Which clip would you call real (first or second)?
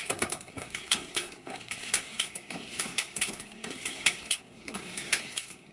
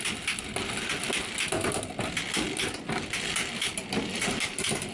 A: second